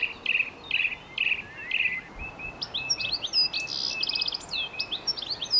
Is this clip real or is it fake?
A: real